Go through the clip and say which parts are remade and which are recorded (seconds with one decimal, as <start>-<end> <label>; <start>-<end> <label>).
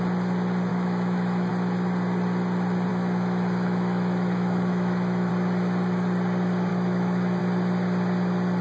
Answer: 0.0-0.7 recorded; 0.7-1.5 remade; 1.5-2.9 recorded; 2.9-5.3 remade; 5.3-6.7 recorded; 6.7-7.4 remade; 7.4-8.6 recorded